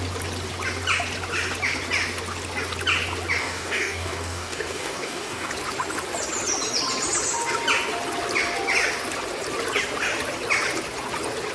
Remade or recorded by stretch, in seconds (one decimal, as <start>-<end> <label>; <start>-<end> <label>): 0.0-3.4 recorded; 3.4-5.5 remade; 5.5-11.5 recorded